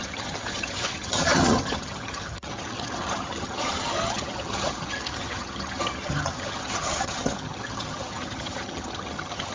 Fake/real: fake